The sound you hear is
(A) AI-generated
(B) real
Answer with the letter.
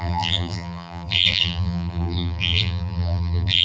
A